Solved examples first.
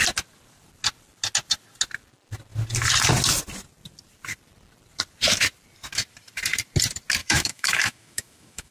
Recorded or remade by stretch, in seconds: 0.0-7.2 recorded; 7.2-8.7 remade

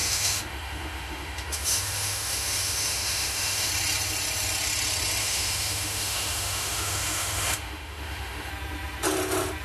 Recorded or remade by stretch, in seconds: 0.0-3.7 remade; 3.7-5.2 recorded; 5.2-8.5 remade; 8.5-9.6 recorded

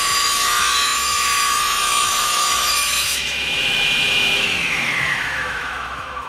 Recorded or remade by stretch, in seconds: 0.0-6.3 remade

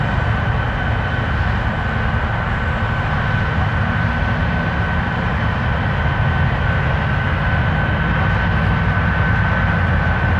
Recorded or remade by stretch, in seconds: 0.0-10.4 recorded